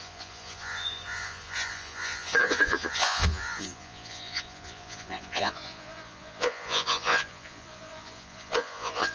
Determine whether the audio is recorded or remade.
remade